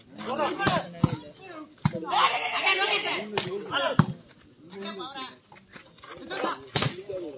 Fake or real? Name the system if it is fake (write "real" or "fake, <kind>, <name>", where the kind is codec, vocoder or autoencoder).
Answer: real